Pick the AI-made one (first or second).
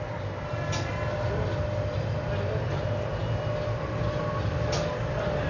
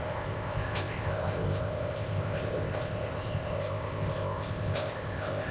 second